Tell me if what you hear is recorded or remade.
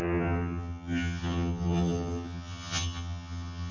remade